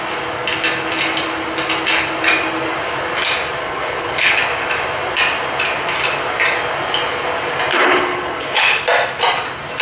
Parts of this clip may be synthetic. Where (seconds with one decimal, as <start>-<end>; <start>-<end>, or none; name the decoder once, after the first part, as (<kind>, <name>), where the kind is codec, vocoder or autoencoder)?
3.6-4.4 (codec, HILCodec); 7.7-8.8